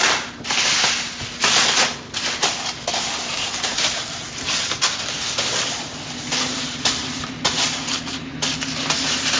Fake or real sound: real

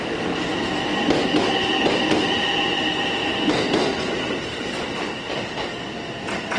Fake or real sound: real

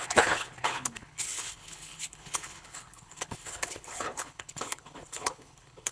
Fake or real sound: fake